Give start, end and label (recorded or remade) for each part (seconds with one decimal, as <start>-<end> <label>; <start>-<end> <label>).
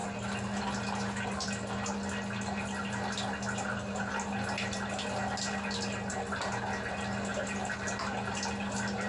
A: 0.0-9.1 recorded